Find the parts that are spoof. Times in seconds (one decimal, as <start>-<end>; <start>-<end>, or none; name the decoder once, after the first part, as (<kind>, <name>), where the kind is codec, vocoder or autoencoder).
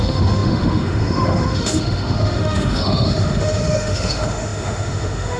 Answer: 0.0-5.4 (autoencoder, DAC-VAE)